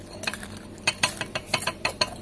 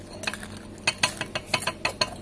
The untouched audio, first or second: second